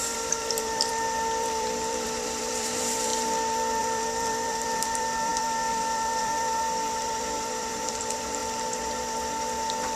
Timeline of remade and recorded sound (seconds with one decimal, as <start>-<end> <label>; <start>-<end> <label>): 0.0-3.1 remade; 3.1-3.8 recorded; 3.8-8.4 remade; 8.4-10.0 recorded